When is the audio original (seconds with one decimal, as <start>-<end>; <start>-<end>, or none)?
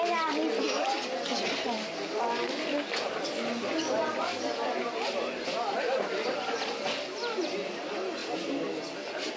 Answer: 0.0-9.4